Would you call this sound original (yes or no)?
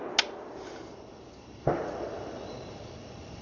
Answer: yes